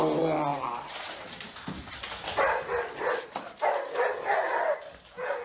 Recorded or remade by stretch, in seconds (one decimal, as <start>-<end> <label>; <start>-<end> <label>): 0.0-0.5 recorded; 0.5-1.9 remade; 1.9-5.4 recorded